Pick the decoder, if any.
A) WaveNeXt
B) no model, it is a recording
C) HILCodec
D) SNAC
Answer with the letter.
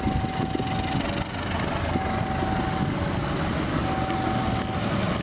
B